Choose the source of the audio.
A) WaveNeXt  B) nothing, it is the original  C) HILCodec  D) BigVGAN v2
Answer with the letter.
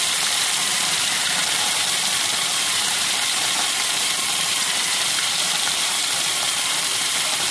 D